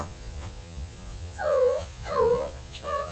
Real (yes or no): no